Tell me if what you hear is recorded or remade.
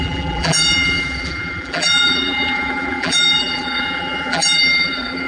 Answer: remade